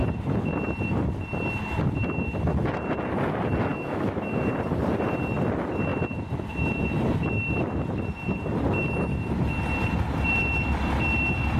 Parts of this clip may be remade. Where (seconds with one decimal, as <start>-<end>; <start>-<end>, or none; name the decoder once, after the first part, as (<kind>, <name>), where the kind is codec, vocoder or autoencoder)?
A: 3.7-4.5 (autoencoder, DAC-VAE)